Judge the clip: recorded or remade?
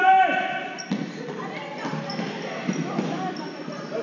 recorded